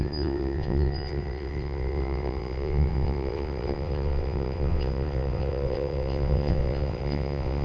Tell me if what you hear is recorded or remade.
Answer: remade